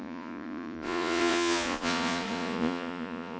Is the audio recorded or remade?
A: remade